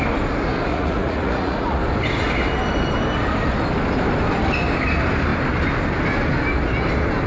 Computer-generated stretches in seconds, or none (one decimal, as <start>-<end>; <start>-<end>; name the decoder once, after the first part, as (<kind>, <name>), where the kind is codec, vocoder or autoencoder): 0.7-1.8 (vocoder, Vocos)